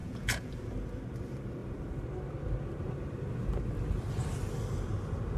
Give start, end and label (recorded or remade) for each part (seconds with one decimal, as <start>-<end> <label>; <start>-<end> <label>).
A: 0.0-0.5 remade; 0.5-5.4 recorded